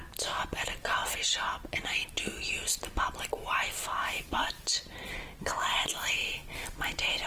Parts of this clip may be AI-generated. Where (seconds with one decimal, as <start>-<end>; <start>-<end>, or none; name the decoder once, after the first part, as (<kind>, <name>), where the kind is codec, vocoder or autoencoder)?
0.0-1.0 (vocoder, BigVGAN v2); 5.4-7.3